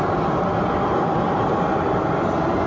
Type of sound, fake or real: real